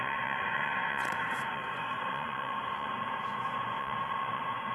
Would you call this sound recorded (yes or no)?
no